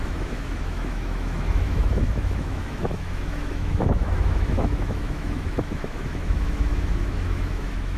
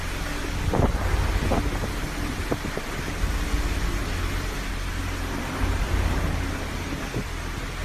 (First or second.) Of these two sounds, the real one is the second